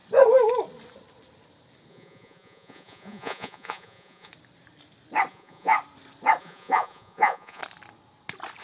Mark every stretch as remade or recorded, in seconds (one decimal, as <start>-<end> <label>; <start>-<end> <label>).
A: 0.0-1.9 recorded; 1.9-4.3 remade; 4.3-5.3 recorded; 5.3-5.7 remade; 5.7-6.4 recorded; 6.4-7.6 remade; 7.6-8.6 recorded